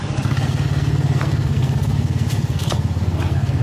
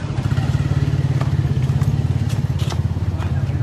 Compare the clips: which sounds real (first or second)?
second